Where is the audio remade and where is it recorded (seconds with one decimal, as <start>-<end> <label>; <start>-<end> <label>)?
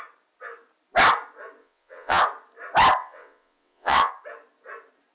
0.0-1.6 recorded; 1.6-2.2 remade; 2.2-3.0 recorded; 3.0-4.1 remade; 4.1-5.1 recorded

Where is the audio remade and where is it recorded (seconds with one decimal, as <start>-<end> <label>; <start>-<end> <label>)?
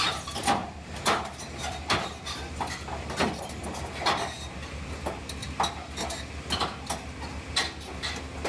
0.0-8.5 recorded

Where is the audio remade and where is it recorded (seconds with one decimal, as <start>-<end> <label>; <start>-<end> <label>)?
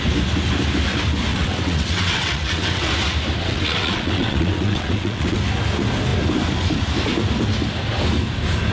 0.0-1.3 recorded; 1.3-2.9 remade; 2.9-3.4 recorded; 3.4-5.4 remade; 5.4-8.7 recorded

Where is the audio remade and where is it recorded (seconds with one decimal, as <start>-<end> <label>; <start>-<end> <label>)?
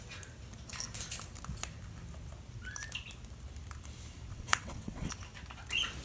0.0-4.3 recorded; 4.3-5.1 remade; 5.1-6.0 recorded